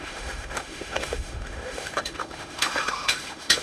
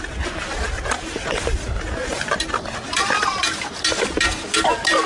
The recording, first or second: second